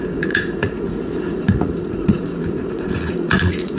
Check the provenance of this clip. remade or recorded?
remade